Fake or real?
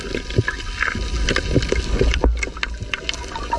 real